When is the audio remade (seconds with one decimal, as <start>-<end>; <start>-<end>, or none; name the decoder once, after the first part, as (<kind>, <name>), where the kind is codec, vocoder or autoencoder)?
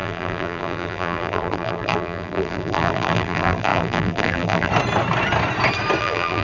0.0-4.7 (vocoder, BigVGAN v2); 6.0-6.4